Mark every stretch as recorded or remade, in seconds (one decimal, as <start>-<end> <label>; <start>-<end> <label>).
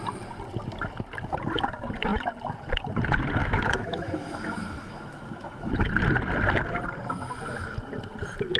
0.0-3.4 recorded; 3.4-5.7 remade; 5.7-8.6 recorded